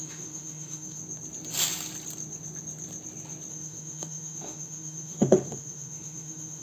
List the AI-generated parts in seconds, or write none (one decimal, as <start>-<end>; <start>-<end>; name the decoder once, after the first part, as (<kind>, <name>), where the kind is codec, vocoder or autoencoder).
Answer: 0.0-1.0 (autoencoder, DAC-VAE); 3.5-6.6

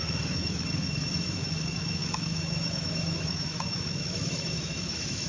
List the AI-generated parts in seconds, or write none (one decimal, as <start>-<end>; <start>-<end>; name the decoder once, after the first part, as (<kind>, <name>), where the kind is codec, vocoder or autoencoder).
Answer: 0.0-5.3 (autoencoder, DAC-VAE)

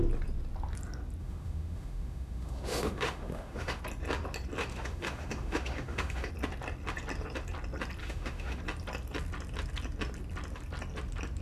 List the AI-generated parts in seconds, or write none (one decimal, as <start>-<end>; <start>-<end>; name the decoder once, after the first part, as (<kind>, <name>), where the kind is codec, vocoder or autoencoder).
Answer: 1.2-3.8 (autoencoder, DAC-VAE); 4.7-6.3; 8.0-8.6

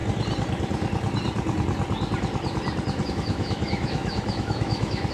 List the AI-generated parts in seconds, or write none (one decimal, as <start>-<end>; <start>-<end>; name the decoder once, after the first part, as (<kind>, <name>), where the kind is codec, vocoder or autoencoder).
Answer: 3.1-5.1 (autoencoder, DAC-VAE)